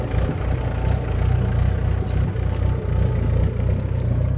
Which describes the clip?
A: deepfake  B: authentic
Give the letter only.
B